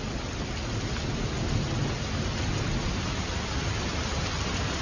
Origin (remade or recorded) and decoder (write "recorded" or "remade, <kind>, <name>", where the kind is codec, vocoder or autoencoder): recorded